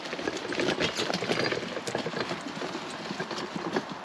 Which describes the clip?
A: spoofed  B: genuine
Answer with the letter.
B